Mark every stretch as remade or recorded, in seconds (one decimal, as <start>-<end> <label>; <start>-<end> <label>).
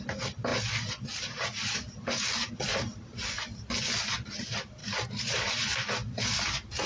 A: 0.0-6.9 recorded